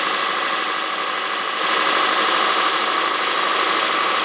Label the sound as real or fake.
real